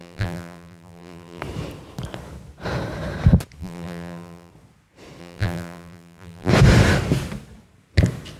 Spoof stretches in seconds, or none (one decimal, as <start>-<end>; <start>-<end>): 0.0-1.4; 3.6-4.5; 5.2-6.5